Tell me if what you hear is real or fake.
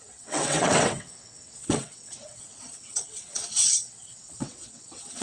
fake